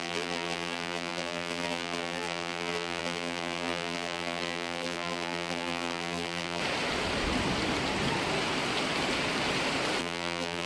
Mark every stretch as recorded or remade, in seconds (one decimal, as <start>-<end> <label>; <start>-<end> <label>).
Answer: 0.0-6.6 remade; 6.6-10.0 recorded; 10.0-10.7 remade